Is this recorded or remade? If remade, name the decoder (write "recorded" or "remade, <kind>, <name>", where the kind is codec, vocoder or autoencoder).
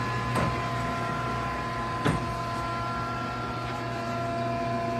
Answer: recorded